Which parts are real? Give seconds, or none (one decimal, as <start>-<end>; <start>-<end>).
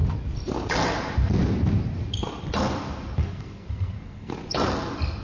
0.0-3.2; 4.3-5.2